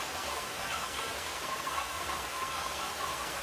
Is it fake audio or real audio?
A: fake